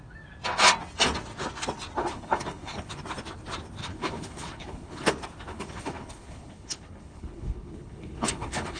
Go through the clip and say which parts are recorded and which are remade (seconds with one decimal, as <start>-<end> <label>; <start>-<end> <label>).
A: 0.0-2.0 recorded; 2.0-2.9 remade; 2.9-3.8 recorded; 3.8-5.1 remade; 5.1-5.5 recorded; 5.5-8.8 remade